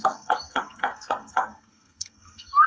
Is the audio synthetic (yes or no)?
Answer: yes